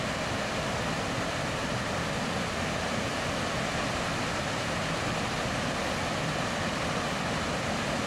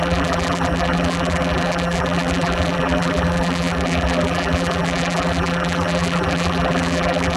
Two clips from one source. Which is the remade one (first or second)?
second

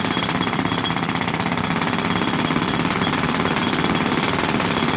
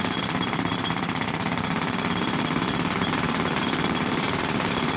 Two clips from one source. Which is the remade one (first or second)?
second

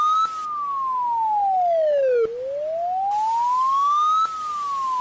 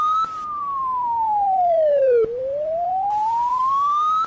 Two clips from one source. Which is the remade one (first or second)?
second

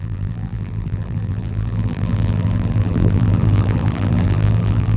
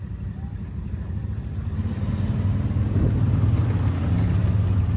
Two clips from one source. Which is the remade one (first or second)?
first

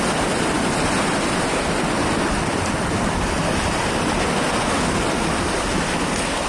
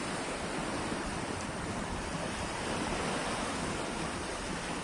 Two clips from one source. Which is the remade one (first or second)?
second